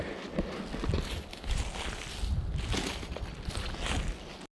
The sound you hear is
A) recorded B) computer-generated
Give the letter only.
A